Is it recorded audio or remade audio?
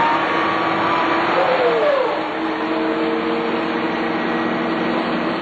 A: recorded